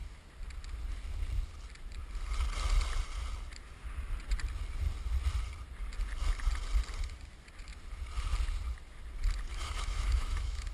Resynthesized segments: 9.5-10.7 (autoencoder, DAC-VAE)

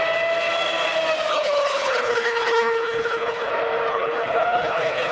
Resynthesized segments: 1.3-3.5 (codec, HILCodec); 3.9-5.1

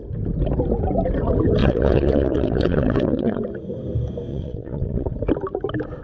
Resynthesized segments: 1.6-3.4 (vocoder, WaveNeXt); 4.3-5.1

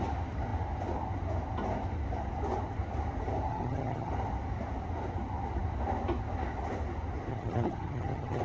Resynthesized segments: 3.5-4.1 (vocoder, HiFi-GAN); 7.3-8.4